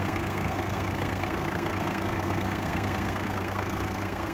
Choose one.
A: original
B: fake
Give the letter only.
B